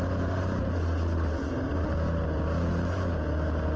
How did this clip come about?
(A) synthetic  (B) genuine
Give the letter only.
B